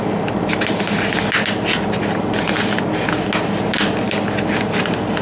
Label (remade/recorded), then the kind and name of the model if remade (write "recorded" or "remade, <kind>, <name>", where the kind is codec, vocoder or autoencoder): recorded